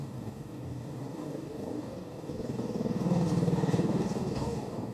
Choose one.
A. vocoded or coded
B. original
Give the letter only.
A